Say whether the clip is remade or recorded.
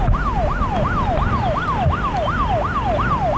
recorded